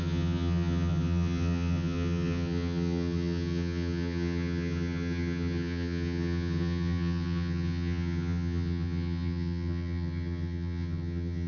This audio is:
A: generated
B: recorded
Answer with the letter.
A